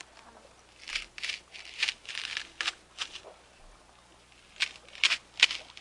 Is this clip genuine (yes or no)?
yes